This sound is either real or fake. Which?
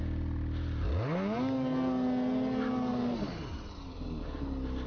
real